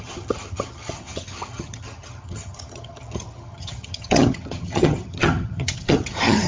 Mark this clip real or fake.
fake